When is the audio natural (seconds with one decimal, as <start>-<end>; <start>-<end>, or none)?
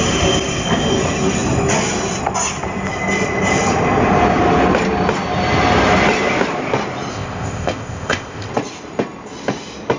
0.0-7.1; 8.5-10.0